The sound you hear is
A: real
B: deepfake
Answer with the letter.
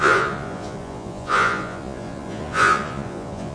B